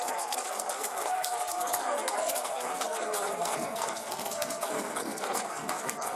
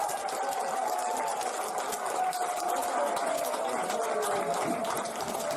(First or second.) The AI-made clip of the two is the first